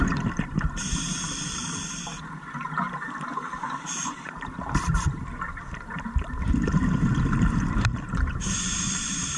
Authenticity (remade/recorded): remade